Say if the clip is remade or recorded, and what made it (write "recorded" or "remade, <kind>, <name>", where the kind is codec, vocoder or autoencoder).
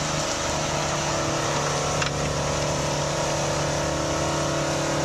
recorded